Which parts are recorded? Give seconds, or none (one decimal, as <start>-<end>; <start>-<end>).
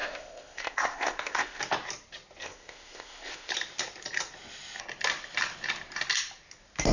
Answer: 1.6-2.4; 3.5-6.9